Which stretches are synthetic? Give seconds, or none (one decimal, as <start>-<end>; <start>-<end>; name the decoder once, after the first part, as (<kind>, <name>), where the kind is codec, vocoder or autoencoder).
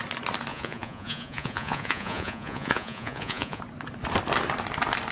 0.5-3.6 (vocoder, Vocos)